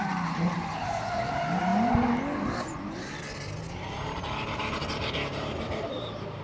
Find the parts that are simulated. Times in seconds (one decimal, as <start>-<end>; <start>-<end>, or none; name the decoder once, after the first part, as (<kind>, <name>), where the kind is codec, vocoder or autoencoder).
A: 0.0-1.7 (vocoder, BigVGAN v2); 4.6-6.4